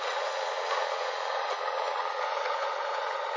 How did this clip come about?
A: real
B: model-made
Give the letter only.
B